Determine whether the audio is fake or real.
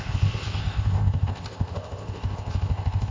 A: fake